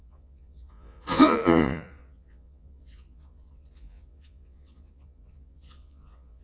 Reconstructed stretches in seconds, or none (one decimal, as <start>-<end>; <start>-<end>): 0.0-6.4